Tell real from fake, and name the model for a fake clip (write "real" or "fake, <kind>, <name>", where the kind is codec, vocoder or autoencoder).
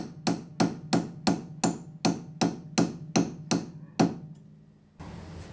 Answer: real